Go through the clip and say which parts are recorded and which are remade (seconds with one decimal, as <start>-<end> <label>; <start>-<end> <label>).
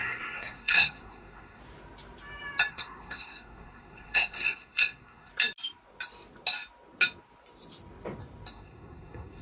0.0-1.6 remade; 1.6-2.7 recorded; 2.7-5.3 remade; 5.3-8.5 recorded; 8.5-9.4 remade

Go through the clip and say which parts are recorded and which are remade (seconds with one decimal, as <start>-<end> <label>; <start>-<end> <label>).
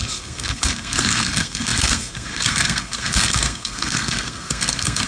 0.0-5.1 remade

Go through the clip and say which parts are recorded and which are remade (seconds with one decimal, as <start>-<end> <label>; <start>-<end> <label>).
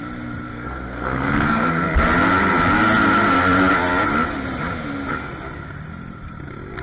0.0-0.5 recorded; 0.5-1.7 remade; 1.7-6.8 recorded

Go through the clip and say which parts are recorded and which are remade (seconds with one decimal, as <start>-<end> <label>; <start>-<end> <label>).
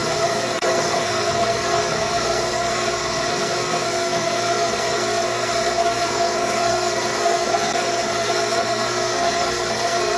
0.0-10.2 remade